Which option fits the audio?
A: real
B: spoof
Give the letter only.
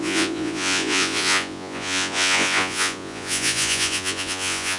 B